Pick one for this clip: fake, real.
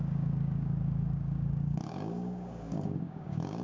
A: fake